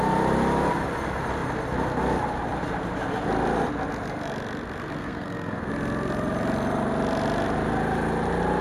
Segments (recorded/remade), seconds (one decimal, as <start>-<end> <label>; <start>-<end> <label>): 0.0-5.0 recorded; 5.0-5.7 remade; 5.7-8.6 recorded